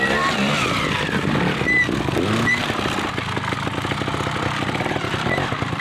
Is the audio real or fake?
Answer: real